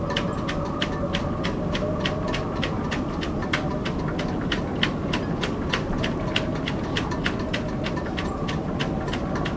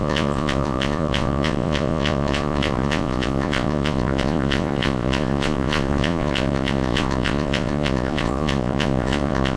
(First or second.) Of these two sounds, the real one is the first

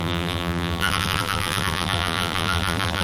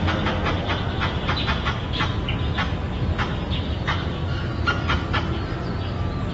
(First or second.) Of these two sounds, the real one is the second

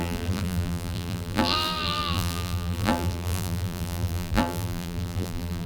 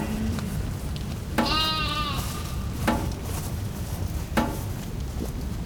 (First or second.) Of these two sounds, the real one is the second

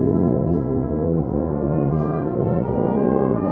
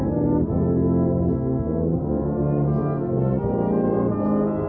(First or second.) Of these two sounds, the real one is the second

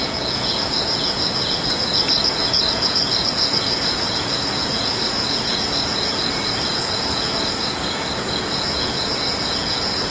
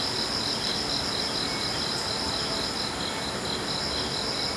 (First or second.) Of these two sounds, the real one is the second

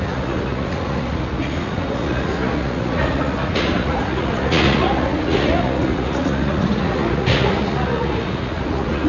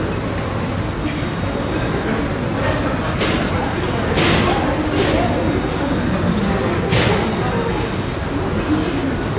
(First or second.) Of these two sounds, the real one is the second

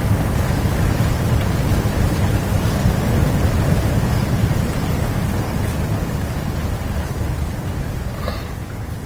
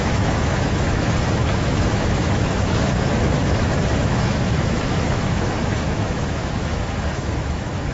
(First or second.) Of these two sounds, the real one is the first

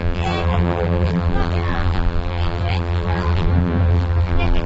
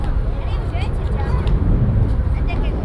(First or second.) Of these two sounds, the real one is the second